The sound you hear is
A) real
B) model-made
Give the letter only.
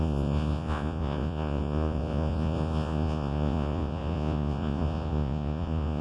B